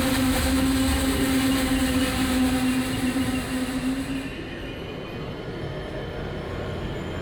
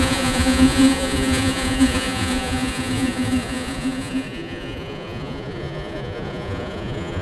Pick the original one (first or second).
first